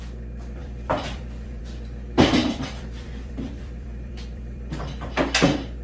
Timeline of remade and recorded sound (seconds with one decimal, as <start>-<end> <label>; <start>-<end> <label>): 0.0-0.6 recorded; 0.6-1.6 remade; 1.6-2.4 recorded; 2.4-4.8 remade; 4.8-5.8 recorded